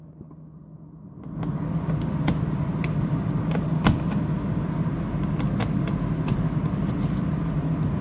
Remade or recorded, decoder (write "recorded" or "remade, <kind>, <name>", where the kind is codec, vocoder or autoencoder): recorded